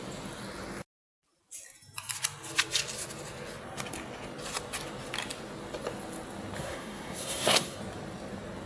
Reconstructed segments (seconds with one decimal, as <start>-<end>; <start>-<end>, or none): 6.6-7.8